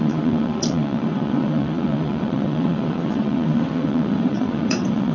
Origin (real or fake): fake